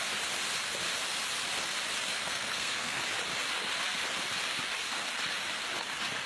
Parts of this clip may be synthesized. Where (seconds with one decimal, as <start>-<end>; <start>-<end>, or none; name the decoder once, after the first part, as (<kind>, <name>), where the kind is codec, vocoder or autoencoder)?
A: 2.1-3.0 (codec, SNAC)